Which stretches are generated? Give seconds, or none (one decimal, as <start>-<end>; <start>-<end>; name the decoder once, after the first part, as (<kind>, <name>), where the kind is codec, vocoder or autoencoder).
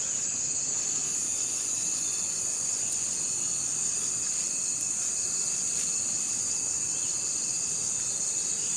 1.3-3.3 (vocoder, Vocos)